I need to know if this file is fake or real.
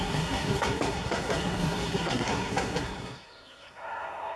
fake